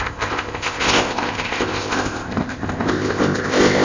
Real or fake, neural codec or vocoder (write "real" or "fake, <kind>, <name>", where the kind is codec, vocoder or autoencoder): fake, codec, ZipCodec